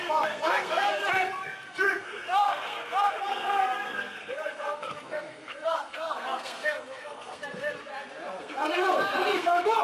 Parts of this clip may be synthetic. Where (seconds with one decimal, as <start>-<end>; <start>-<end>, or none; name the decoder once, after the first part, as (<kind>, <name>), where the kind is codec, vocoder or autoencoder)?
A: 0.0-7.9 (codec, SNAC); 8.4-9.8